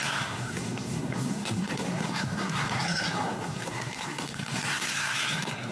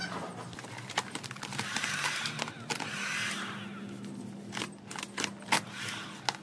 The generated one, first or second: first